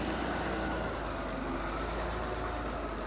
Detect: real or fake real